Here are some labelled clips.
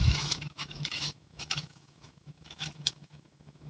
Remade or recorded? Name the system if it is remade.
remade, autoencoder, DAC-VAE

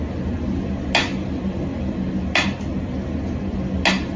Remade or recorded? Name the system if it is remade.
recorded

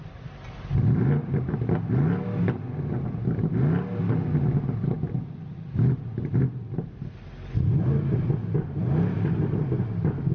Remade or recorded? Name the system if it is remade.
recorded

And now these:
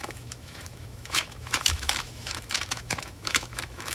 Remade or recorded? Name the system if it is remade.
remade, autoencoder, DAC-VAE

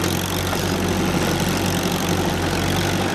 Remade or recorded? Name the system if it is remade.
recorded